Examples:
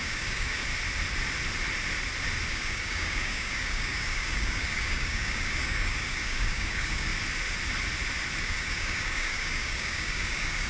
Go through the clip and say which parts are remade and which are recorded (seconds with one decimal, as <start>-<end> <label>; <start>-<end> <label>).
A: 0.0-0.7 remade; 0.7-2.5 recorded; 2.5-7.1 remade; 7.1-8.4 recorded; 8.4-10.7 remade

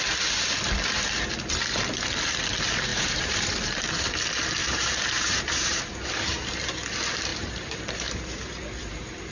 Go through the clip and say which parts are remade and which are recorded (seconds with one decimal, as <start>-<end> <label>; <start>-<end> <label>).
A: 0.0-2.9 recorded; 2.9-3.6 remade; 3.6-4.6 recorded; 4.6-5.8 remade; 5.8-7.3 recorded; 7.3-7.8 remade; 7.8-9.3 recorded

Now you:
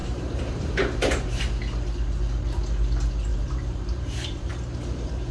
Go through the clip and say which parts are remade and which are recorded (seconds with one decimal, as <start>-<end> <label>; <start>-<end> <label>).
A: 0.0-1.4 remade; 1.4-3.3 recorded; 3.3-4.5 remade; 4.5-5.3 recorded

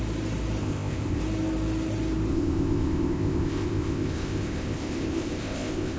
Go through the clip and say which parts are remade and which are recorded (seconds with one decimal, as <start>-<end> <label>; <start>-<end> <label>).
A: 0.0-0.6 recorded; 0.6-1.2 remade; 1.2-2.3 recorded; 2.3-6.0 remade

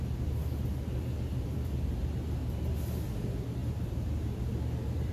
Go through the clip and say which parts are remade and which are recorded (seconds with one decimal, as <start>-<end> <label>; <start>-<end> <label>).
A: 0.0-5.1 recorded

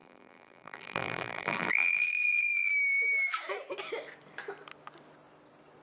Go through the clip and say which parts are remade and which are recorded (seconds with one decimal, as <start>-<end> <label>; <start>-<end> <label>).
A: 0.0-2.7 remade; 2.7-5.8 recorded

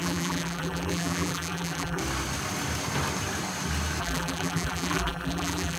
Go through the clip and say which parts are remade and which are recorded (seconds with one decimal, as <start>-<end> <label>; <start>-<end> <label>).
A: 0.0-2.0 remade; 2.0-4.0 recorded; 4.0-5.8 remade